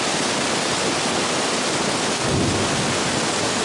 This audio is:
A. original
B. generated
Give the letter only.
A